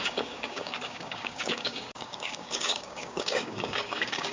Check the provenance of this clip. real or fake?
fake